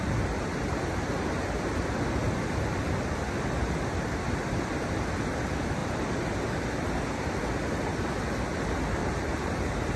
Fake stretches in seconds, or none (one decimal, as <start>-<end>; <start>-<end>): 5.8-6.3; 9.0-10.0